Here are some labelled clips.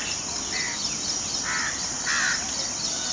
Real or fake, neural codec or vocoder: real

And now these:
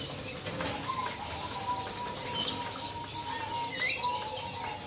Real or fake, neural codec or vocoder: real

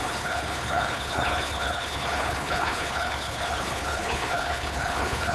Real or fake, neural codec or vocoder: fake, codec, HILCodec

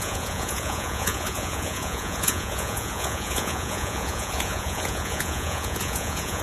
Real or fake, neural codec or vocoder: fake, vocoder, Vocos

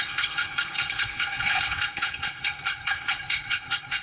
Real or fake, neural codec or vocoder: fake, codec, HILCodec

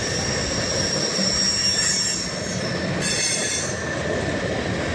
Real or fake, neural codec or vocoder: real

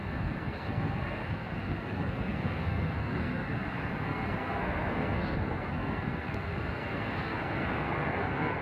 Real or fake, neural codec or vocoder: fake, codec, SNAC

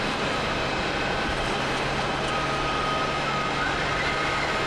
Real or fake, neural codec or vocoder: real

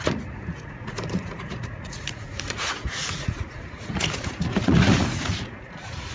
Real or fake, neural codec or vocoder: fake, vocoder, Vocos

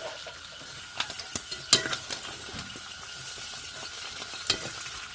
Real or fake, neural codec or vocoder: real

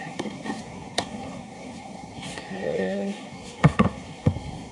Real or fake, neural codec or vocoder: fake, codec, SNAC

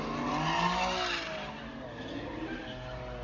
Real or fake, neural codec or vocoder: real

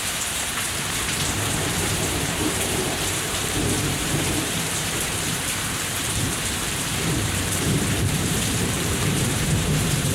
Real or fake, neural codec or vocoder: fake, vocoder, BigVGAN v2